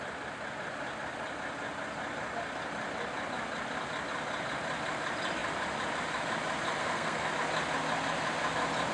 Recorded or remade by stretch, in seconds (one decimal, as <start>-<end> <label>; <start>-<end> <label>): 0.0-6.8 recorded; 6.8-7.3 remade; 7.3-8.9 recorded